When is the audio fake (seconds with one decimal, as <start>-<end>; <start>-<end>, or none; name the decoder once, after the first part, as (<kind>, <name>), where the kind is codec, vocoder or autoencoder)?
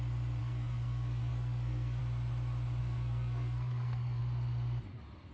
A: 0.4-2.0 (codec, SNAC); 2.8-4.2